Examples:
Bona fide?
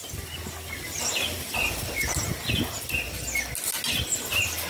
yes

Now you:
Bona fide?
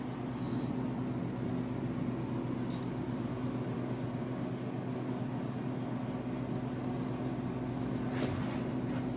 yes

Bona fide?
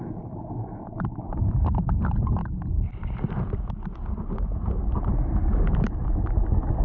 yes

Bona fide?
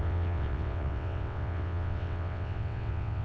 no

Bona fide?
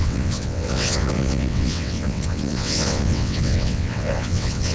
no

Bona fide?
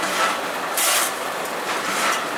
no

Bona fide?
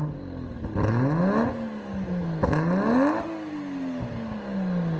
yes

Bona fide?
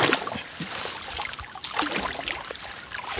yes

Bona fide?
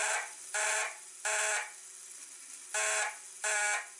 yes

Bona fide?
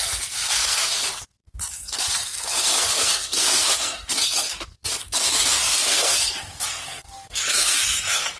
no